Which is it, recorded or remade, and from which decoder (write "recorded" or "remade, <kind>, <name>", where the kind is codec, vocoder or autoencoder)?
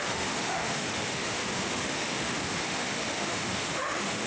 remade, autoencoder, DAC-VAE